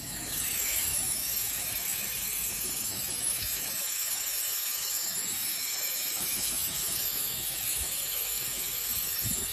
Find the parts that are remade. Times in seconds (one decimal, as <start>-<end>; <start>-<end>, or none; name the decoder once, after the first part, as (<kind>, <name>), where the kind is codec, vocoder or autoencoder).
0.0-9.5 (autoencoder, DAC-VAE)